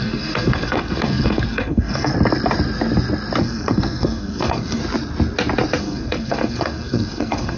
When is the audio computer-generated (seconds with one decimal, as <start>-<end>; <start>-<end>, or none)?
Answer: 0.0-2.1; 3.4-4.8; 5.8-7.6